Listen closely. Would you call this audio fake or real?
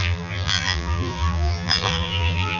fake